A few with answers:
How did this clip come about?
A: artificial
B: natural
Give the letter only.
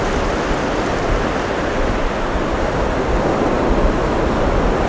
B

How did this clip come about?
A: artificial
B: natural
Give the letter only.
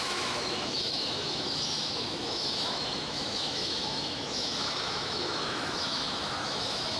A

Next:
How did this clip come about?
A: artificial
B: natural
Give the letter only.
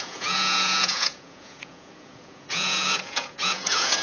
A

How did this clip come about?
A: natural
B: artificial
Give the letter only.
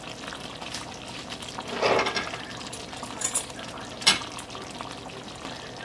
B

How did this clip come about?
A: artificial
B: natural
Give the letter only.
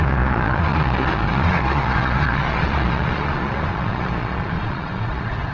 A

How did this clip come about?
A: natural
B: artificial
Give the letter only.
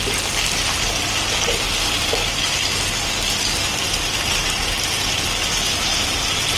A